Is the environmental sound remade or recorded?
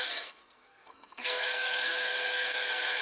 remade